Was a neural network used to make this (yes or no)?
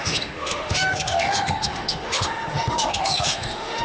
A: yes